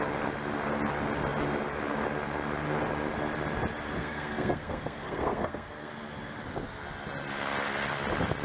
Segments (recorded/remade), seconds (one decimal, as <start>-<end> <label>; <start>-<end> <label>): 0.0-4.0 recorded; 4.0-5.9 remade; 5.9-8.4 recorded